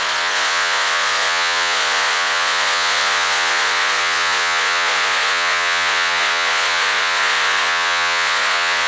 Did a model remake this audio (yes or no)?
yes